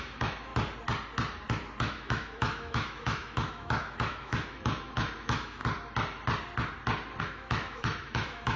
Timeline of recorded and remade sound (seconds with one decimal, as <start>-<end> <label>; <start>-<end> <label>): 0.0-0.5 remade; 0.5-1.8 recorded; 1.8-5.6 remade; 5.6-7.2 recorded; 7.2-8.6 remade